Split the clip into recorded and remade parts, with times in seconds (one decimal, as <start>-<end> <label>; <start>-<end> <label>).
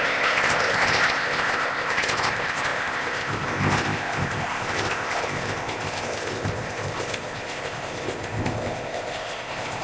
0.0-9.8 remade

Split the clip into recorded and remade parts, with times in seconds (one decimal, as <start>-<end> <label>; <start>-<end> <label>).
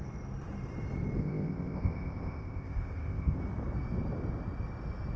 0.0-1.2 recorded; 1.2-3.4 remade; 3.4-5.2 recorded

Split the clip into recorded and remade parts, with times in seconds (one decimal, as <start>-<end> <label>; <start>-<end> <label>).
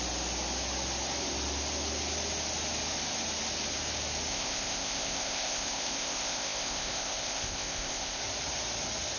0.0-4.3 recorded; 4.3-8.2 remade; 8.2-9.2 recorded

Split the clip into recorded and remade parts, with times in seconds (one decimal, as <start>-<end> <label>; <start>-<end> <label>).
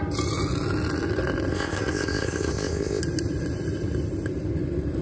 0.0-1.5 recorded; 1.5-3.0 remade; 3.0-5.0 recorded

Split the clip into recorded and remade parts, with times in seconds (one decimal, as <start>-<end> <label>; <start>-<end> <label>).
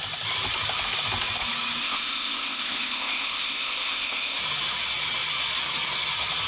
0.0-1.8 recorded; 1.8-4.4 remade; 4.4-6.5 recorded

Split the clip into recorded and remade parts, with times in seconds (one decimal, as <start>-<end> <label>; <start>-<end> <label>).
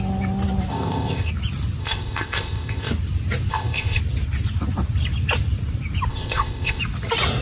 0.0-0.7 recorded; 0.7-1.3 remade; 1.3-1.8 recorded; 1.8-2.9 remade; 2.9-3.5 recorded; 3.5-4.0 remade; 4.0-6.1 recorded; 6.1-6.8 remade; 6.8-7.4 recorded